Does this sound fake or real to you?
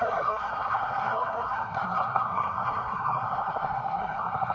fake